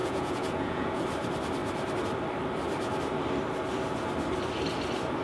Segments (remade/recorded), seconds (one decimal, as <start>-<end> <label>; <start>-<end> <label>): 0.0-1.0 remade; 1.0-5.2 recorded